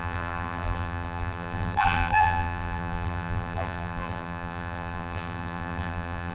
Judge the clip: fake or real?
fake